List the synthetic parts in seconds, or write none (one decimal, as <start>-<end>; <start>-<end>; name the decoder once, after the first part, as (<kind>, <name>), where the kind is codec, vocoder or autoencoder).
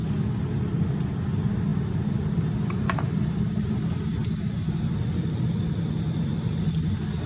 none